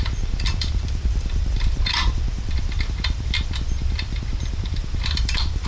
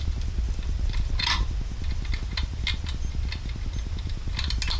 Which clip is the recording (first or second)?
second